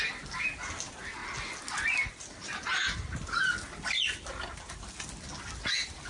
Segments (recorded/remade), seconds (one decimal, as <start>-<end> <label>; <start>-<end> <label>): 0.0-6.1 recorded